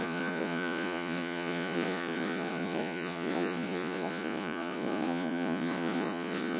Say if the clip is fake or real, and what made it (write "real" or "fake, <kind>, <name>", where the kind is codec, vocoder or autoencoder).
fake, vocoder, Vocos